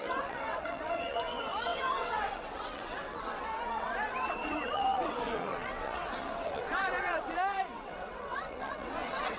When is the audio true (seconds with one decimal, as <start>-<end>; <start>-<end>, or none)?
none